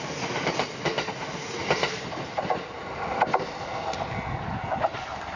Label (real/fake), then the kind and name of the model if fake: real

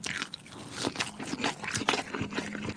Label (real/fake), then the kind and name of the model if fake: real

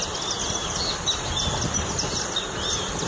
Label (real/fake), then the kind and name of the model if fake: real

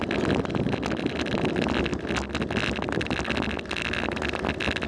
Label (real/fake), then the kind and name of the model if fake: real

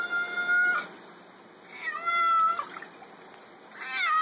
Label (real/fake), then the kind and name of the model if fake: real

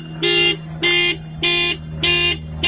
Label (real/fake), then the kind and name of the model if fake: real